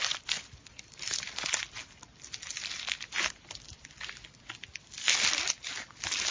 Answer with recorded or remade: recorded